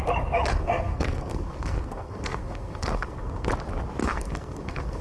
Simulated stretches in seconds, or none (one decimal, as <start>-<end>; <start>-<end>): 0.5-3.5; 4.0-5.0